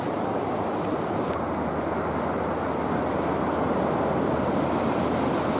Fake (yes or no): no